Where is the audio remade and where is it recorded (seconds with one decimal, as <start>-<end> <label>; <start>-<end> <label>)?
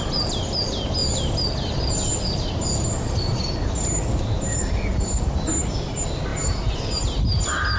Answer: 0.0-7.8 recorded